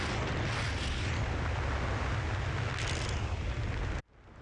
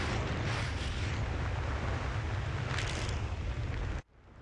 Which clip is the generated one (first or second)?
second